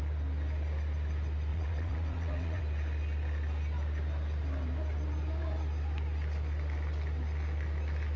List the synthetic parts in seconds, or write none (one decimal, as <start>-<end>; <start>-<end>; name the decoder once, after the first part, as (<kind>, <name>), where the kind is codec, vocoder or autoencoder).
1.5-2.6 (vocoder, WaveNeXt)